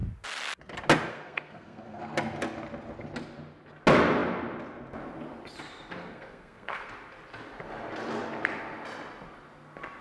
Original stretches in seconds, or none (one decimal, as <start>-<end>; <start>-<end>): 0.0-1.1; 2.0-6.0; 6.9-10.0